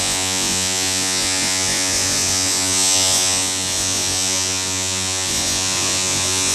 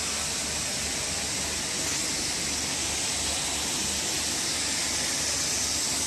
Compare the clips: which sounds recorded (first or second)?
second